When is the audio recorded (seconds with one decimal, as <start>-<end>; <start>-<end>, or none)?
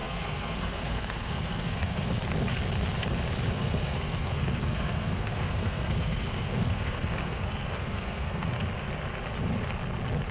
2.1-3.5; 8.5-10.3